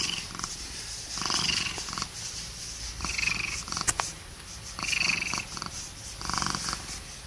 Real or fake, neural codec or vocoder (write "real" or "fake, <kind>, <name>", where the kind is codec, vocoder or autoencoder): real